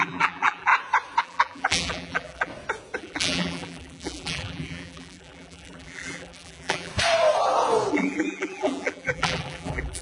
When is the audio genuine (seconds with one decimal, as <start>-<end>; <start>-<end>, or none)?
0.7-1.2; 2.5-3.0; 6.9-7.9